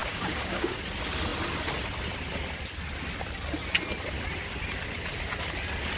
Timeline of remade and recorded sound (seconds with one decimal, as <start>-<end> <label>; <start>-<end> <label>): 0.0-0.8 remade; 0.8-6.0 recorded